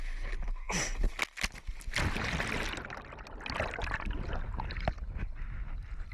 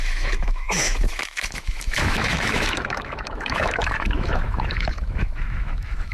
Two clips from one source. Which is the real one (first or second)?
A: first